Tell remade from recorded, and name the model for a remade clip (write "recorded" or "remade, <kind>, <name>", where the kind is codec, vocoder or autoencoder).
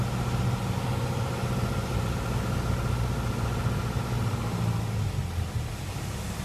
recorded